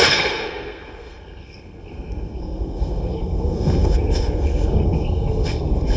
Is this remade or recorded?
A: remade